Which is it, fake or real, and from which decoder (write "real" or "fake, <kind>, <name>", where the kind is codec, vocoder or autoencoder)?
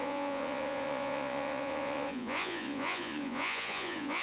fake, vocoder, Vocos